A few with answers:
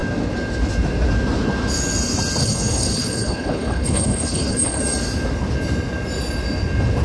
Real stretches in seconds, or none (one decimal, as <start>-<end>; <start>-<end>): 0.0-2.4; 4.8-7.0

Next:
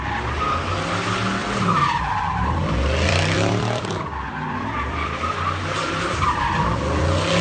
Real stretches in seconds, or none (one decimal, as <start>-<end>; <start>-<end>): 0.0-1.4; 2.0-2.6; 7.0-7.4

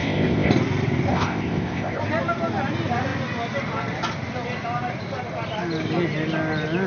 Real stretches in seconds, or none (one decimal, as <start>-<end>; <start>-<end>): 0.5-1.1; 2.0-6.9

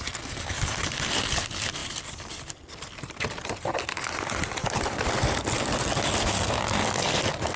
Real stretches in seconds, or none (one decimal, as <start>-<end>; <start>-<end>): 0.0-7.6

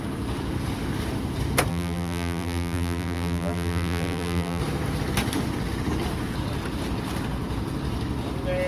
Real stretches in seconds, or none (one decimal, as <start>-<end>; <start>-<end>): 0.0-1.7; 4.6-8.7